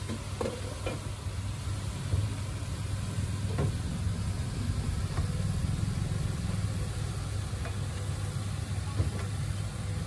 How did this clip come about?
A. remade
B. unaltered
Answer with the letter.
B